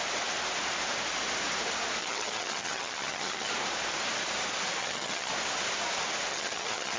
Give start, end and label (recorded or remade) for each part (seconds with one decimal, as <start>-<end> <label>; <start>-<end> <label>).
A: 0.0-2.0 recorded; 2.0-3.5 remade; 3.5-4.8 recorded; 4.8-5.3 remade; 5.3-6.3 recorded; 6.3-7.0 remade